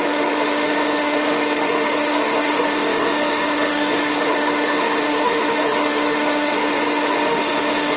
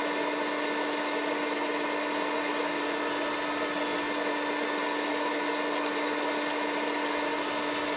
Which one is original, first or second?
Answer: second